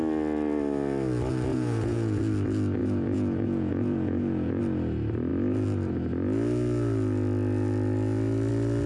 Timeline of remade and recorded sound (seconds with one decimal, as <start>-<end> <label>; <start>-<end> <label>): 0.0-1.5 recorded; 1.5-2.2 remade; 2.2-2.8 recorded; 2.8-4.6 remade; 4.6-8.9 recorded